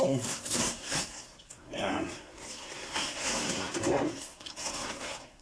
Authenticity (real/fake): fake